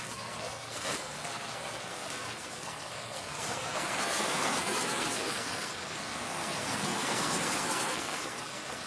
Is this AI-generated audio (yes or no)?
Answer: yes